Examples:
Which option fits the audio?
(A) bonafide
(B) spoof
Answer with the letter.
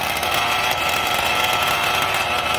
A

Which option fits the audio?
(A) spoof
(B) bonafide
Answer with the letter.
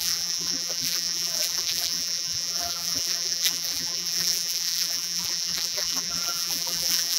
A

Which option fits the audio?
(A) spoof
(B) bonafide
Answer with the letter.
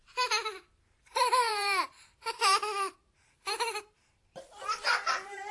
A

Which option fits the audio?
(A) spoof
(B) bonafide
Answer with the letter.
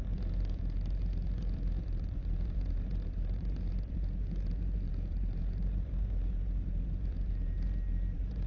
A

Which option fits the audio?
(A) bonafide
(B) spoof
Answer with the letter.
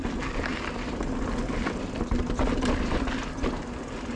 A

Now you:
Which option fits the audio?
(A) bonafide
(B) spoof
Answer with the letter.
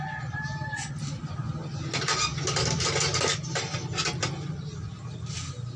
A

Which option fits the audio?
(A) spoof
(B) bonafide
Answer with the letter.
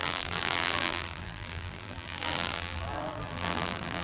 A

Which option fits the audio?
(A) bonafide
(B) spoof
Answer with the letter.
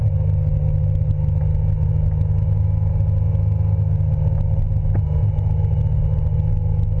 A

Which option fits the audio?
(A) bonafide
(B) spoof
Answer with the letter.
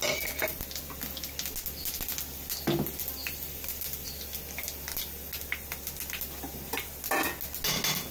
A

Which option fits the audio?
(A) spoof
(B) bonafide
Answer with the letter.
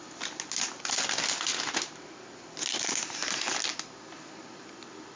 B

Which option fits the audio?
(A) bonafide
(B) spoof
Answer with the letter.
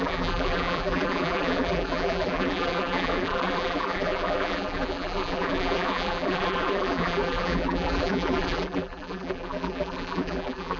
B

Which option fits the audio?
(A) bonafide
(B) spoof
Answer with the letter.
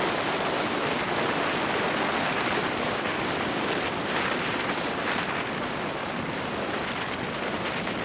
B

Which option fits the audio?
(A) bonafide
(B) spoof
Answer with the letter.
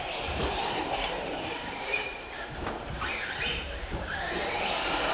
B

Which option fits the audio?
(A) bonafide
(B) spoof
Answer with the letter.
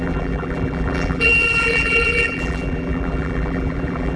B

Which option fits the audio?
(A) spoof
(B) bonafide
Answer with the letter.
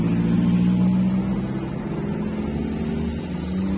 B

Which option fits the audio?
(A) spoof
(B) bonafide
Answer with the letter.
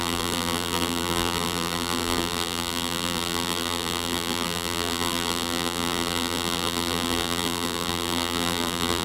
A